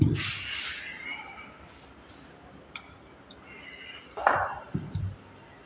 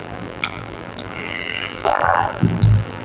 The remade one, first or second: second